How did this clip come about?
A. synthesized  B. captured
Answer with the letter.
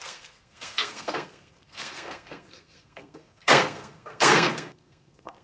A